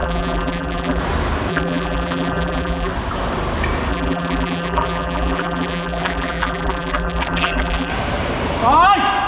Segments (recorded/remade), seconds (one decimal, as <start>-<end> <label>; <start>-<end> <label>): 0.0-1.0 remade; 1.0-1.5 recorded; 1.5-2.9 remade; 2.9-3.9 recorded; 3.9-7.9 remade; 7.9-9.3 recorded